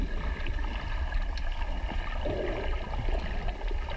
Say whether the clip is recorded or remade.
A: recorded